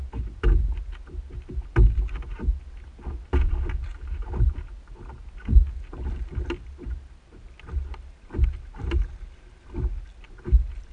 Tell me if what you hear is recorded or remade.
recorded